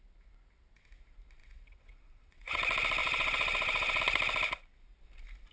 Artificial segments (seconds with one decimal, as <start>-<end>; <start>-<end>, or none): 1.4-2.6; 3.0-4.0